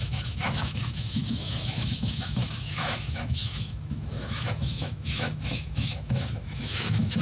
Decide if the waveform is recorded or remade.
remade